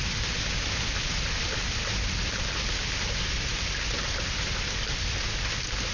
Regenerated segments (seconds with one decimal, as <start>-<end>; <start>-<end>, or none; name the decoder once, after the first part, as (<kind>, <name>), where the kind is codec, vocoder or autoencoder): none

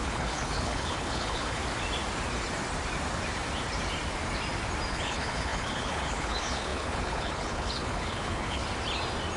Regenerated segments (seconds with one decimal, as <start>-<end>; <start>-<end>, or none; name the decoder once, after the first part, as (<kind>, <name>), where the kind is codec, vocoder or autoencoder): 0.0-1.6 (codec, HILCodec); 4.9-8.6

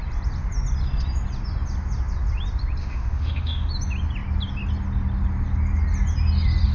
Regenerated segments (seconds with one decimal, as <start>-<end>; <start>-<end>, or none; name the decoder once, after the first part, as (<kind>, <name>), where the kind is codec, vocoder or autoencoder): 2.8-3.7 (autoencoder, DAC-VAE)

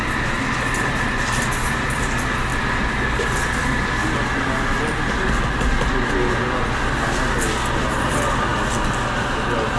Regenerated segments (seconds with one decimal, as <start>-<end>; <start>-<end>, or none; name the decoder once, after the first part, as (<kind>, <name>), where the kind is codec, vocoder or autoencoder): none